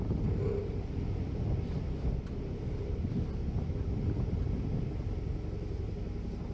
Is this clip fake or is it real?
real